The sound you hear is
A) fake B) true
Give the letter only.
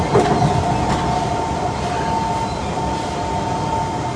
B